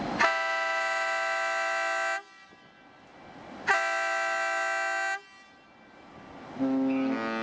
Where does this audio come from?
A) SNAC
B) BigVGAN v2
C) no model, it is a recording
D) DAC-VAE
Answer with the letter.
C